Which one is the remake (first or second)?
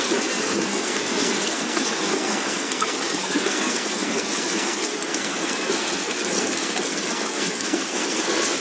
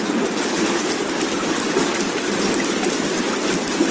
first